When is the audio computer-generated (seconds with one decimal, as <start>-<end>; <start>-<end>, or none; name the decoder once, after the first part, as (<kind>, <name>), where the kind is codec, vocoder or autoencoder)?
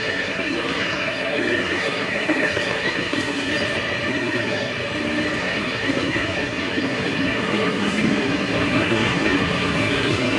0.0-3.5 (codec, SNAC); 4.1-4.7; 5.4-10.4